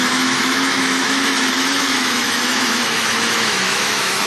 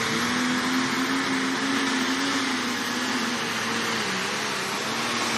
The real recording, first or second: second